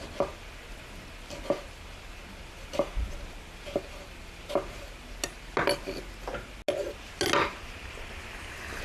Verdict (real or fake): real